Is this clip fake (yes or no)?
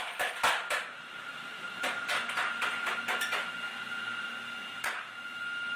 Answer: no